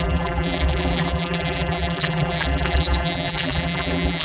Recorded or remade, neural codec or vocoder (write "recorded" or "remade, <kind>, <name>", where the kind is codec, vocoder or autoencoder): remade, vocoder, BigVGAN v2